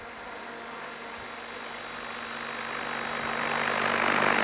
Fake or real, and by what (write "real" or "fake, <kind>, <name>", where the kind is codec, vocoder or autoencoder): real